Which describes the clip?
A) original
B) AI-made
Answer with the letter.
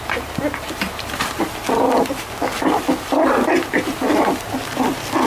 A